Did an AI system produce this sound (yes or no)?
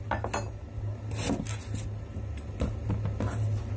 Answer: no